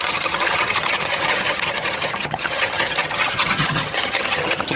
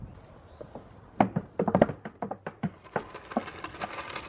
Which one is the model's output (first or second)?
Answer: first